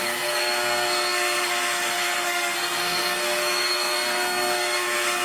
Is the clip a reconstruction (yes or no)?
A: yes